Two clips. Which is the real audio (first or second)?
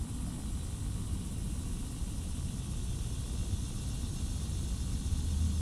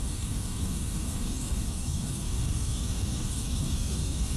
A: first